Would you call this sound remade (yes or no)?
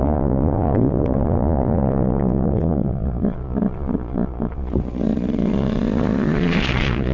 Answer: yes